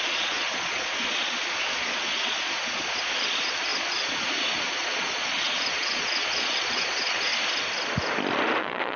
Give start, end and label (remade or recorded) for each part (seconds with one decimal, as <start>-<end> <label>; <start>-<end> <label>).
0.0-7.3 remade; 7.3-8.6 recorded; 8.6-9.0 remade